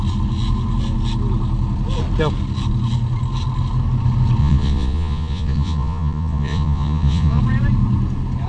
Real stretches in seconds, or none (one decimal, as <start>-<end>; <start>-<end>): 0.0-4.4; 7.4-8.5